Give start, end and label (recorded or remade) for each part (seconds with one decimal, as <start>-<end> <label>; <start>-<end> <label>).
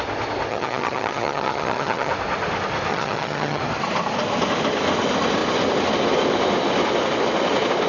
0.0-0.5 recorded; 0.5-2.1 remade; 2.1-2.9 recorded; 2.9-3.6 remade; 3.6-7.9 recorded